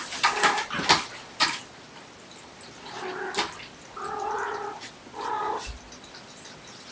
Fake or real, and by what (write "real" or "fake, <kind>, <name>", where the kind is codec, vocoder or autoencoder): real